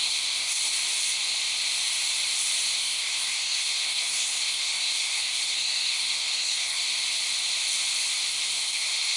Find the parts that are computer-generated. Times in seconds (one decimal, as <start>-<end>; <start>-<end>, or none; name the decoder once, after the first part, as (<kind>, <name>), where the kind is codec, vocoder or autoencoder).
0.0-0.7 (codec, SNAC); 2.8-6.8; 8.3-9.2